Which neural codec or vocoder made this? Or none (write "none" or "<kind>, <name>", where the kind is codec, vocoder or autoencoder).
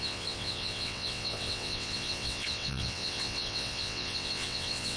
vocoder, WaveNeXt